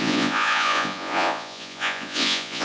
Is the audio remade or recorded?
remade